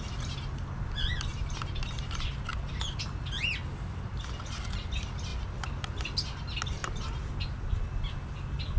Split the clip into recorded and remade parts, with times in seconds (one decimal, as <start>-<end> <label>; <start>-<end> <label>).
0.0-8.8 recorded